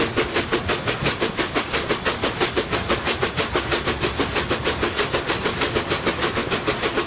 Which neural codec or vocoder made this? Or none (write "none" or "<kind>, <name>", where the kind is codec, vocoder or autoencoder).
none